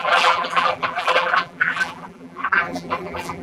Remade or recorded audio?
remade